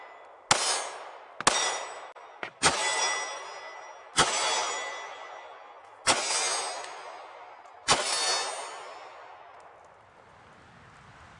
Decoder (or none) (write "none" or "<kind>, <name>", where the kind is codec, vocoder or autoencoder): none